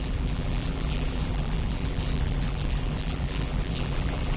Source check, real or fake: fake